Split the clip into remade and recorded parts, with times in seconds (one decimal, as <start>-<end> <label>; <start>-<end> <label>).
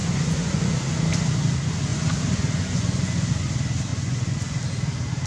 0.0-0.6 remade; 0.6-1.9 recorded; 1.9-3.3 remade; 3.3-3.9 recorded; 3.9-4.6 remade; 4.6-5.3 recorded